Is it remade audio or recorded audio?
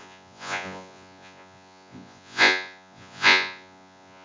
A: remade